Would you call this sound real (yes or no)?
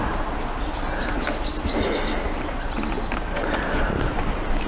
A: yes